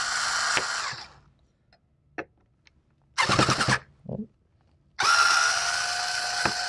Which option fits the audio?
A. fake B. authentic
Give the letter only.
B